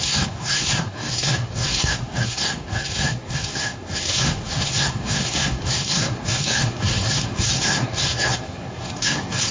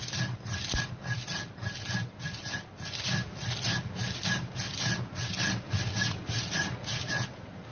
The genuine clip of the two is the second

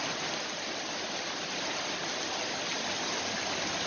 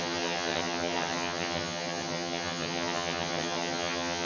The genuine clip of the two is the first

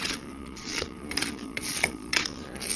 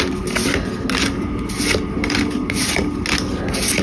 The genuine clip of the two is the second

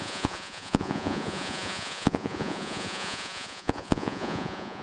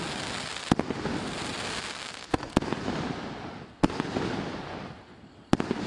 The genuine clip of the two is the second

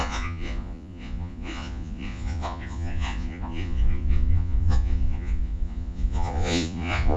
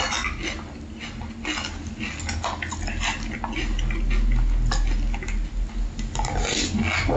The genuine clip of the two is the second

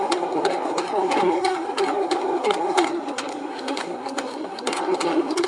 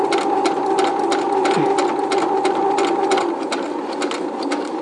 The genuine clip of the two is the second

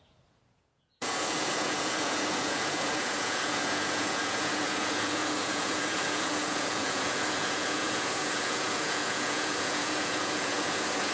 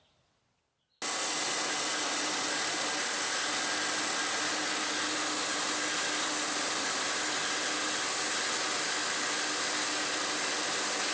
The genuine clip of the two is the second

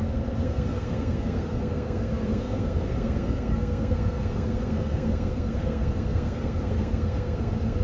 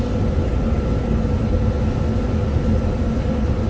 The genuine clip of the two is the second